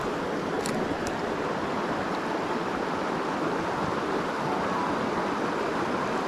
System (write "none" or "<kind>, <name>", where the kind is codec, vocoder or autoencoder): none